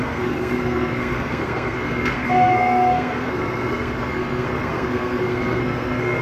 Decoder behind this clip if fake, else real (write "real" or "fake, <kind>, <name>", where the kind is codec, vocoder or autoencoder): fake, codec, SNAC